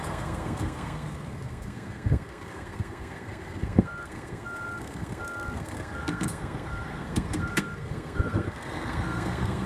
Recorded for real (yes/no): no